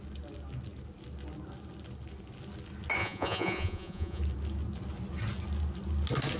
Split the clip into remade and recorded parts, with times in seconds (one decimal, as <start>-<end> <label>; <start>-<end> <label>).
0.0-3.0 recorded; 3.0-4.2 remade; 4.2-6.4 recorded

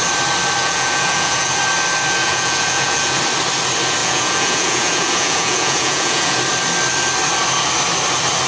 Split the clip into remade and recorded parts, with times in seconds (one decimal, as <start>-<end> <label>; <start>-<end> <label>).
0.0-0.6 recorded; 0.6-1.6 remade; 1.6-2.2 recorded; 2.2-3.2 remade; 3.2-4.0 recorded; 4.0-6.4 remade; 6.4-8.5 recorded

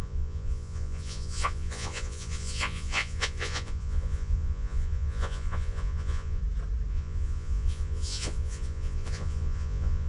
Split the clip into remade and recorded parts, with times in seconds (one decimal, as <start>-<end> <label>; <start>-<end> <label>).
0.0-6.4 remade; 6.4-6.9 recorded; 6.9-10.1 remade

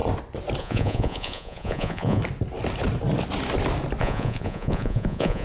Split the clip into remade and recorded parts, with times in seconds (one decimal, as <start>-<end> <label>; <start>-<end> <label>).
0.0-0.6 recorded; 0.6-2.2 remade; 2.2-4.0 recorded; 4.0-5.4 remade

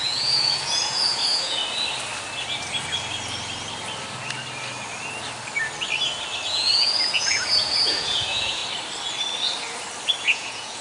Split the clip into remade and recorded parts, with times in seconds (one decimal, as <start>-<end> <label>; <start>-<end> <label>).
0.0-1.6 remade; 1.6-6.5 recorded; 6.5-8.6 remade; 8.6-10.2 recorded; 10.2-10.8 remade

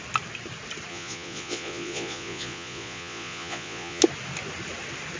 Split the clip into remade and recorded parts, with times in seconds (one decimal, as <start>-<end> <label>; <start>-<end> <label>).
0.0-0.9 recorded; 0.9-4.0 remade; 4.0-5.2 recorded

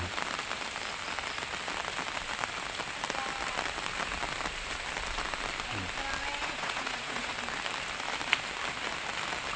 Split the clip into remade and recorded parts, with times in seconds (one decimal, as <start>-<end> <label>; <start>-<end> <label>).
0.0-6.4 recorded; 6.4-7.3 remade; 7.3-9.6 recorded

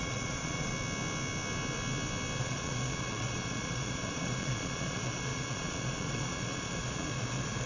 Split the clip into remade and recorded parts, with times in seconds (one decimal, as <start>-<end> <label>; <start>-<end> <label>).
0.0-0.7 remade; 0.7-2.4 recorded; 2.4-7.7 remade